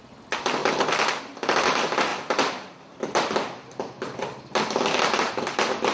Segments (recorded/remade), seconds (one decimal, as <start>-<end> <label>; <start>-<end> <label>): 0.0-5.9 recorded

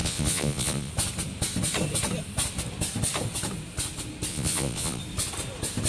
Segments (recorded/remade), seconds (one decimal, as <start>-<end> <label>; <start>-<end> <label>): 0.0-0.9 remade; 0.9-4.3 recorded; 4.3-5.0 remade; 5.0-5.9 recorded